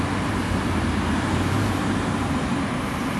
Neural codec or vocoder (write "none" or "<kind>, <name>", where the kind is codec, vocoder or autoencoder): vocoder, BigVGAN v2